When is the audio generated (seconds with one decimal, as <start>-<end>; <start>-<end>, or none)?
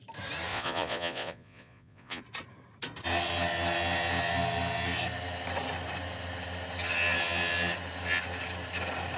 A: 0.5-2.2